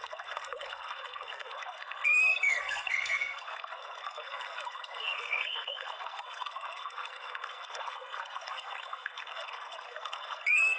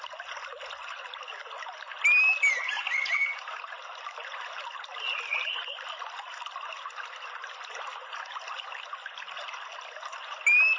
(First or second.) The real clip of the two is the second